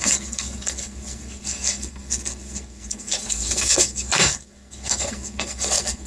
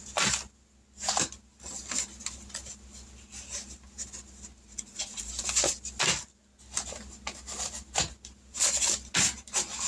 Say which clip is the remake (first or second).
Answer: first